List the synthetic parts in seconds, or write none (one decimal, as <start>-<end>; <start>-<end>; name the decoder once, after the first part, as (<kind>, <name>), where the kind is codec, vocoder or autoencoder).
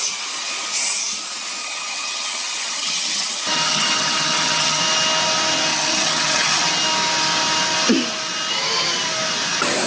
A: 1.6-4.8 (vocoder, HiFi-GAN); 5.7-6.6